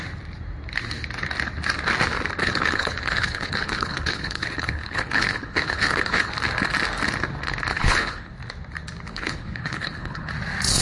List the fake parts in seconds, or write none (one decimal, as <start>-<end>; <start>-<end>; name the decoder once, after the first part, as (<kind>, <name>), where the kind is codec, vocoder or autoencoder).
2.4-6.3 (codec, HILCodec); 7.7-8.3; 9.1-10.3